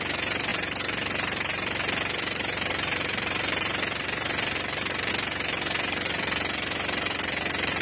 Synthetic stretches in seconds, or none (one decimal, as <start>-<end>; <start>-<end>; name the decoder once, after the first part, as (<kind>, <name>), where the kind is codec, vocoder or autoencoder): none